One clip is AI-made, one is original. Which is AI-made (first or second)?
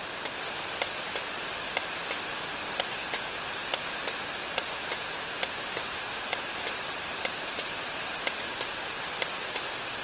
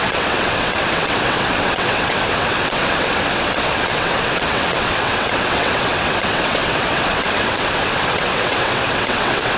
second